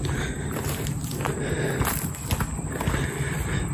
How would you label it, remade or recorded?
recorded